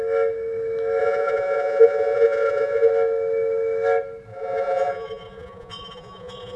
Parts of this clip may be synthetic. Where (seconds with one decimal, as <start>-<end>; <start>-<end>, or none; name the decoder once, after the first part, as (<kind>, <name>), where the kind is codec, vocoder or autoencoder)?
1.0-2.9 (vocoder, Vocos); 4.3-6.6